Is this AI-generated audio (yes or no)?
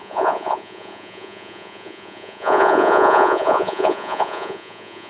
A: yes